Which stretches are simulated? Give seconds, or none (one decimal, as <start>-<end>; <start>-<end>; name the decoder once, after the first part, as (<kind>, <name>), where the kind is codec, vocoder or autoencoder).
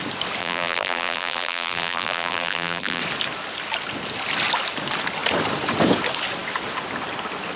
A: 0.4-3.0 (vocoder, BigVGAN v2)